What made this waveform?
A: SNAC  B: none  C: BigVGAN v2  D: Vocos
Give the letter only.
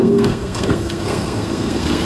A